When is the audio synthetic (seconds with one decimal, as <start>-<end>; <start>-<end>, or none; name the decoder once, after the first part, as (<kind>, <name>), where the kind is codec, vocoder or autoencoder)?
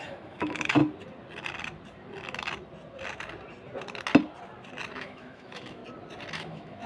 0.0-0.8 (autoencoder, DAC-VAE); 4.9-5.8; 6.3-6.9